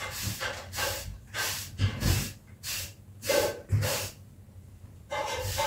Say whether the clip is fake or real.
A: fake